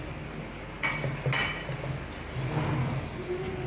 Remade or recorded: recorded